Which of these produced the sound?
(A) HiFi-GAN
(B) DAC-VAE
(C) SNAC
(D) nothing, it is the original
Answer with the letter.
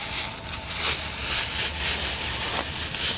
D